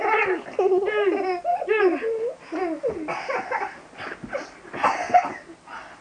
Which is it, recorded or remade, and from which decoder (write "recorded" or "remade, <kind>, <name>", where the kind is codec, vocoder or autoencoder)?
recorded